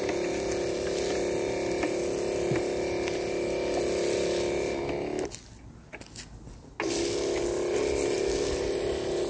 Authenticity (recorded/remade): recorded